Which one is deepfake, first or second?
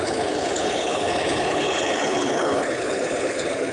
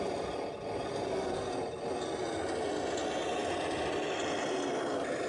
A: first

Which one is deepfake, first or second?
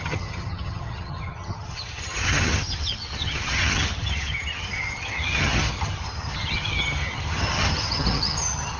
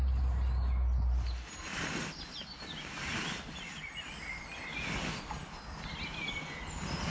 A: first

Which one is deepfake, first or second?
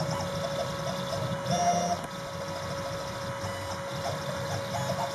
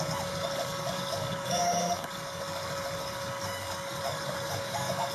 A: second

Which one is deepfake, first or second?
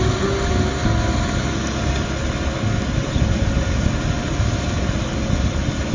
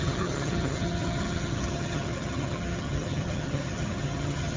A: second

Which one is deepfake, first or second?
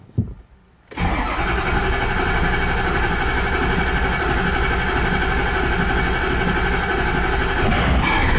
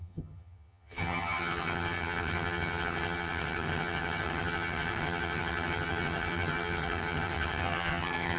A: second